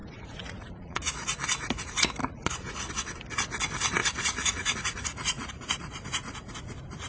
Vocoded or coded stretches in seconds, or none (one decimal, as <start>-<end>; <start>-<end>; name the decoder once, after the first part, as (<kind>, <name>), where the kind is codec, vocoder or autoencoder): 0.0-1.1 (vocoder, Vocos); 2.2-2.9; 4.0-5.5